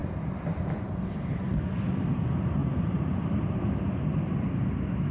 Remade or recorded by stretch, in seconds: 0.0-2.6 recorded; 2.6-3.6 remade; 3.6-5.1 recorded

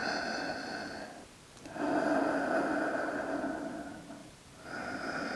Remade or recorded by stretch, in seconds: 0.0-4.2 recorded; 4.2-5.4 remade